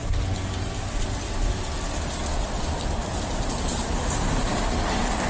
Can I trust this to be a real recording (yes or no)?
yes